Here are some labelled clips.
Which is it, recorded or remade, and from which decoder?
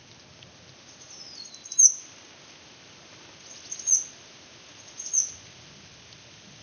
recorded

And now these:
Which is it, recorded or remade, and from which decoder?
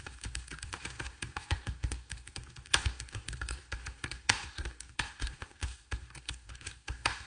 remade, codec, SNAC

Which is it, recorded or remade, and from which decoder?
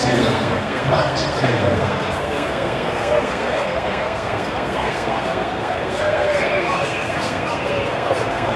remade, codec, SNAC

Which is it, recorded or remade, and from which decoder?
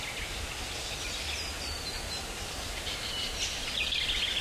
recorded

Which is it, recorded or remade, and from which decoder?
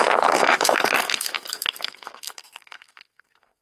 remade, codec, SNAC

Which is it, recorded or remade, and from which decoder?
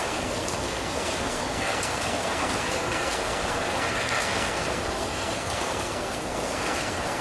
remade, codec, SNAC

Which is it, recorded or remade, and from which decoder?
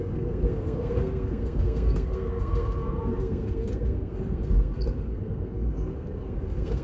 remade, codec, SNAC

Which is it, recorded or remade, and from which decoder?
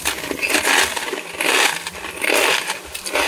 recorded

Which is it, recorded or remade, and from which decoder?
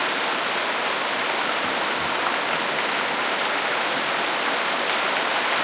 recorded